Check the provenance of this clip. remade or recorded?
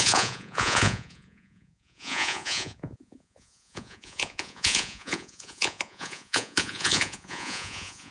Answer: remade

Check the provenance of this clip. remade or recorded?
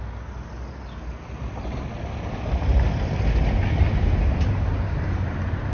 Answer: recorded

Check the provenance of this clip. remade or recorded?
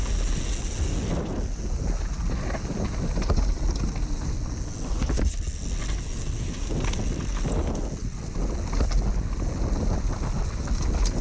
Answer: recorded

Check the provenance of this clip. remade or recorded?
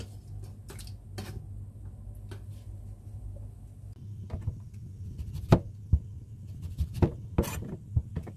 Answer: recorded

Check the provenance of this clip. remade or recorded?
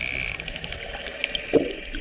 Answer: recorded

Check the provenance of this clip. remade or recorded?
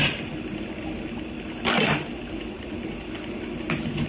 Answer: recorded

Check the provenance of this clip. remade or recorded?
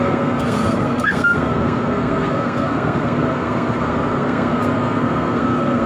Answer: remade